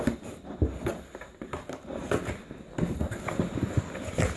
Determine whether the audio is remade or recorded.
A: recorded